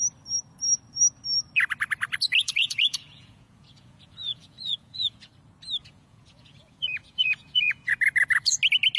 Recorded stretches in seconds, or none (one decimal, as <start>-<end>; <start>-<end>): 0.0-2.4; 5.3-5.8; 7.9-9.0

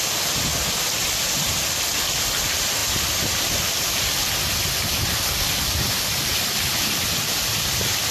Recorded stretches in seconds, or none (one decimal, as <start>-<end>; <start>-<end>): 0.0-8.1